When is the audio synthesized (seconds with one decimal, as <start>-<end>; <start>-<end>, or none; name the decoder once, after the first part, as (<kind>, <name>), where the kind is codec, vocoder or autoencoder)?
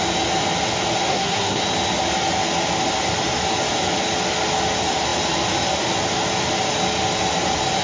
1.1-1.6 (codec, SNAC)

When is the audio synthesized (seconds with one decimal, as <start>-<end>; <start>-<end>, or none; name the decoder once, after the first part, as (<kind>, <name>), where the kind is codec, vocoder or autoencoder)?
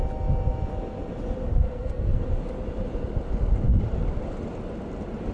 1.5-2.2 (codec, SNAC)